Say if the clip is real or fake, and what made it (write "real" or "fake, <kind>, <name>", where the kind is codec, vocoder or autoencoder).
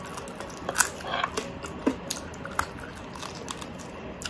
real